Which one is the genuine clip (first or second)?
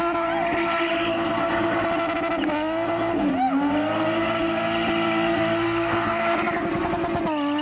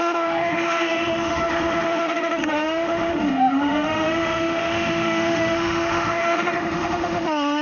first